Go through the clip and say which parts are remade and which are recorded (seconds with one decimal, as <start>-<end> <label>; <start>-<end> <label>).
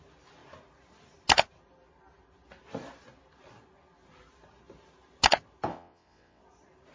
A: 0.0-5.7 recorded; 5.7-6.4 remade; 6.4-6.9 recorded